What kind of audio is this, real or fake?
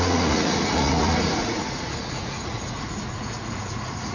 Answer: fake